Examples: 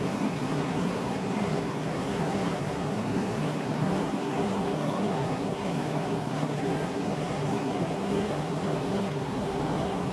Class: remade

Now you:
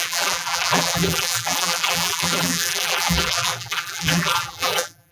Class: remade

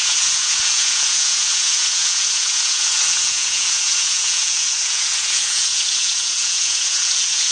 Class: remade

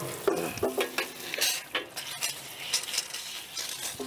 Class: recorded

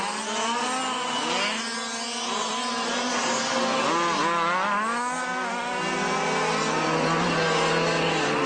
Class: recorded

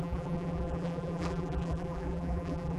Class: remade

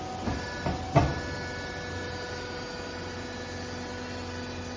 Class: recorded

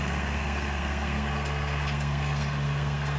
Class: remade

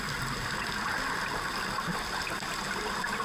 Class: recorded